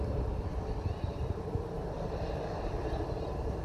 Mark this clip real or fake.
real